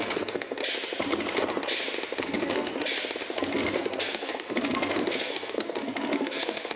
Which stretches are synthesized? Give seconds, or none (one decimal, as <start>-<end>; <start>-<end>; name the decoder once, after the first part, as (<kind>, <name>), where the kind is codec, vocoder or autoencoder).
0.0-0.6 (codec, SNAC); 2.2-2.7; 3.3-6.8